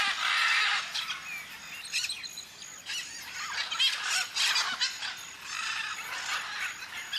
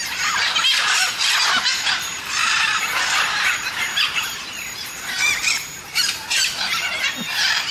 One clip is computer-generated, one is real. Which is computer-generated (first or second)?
second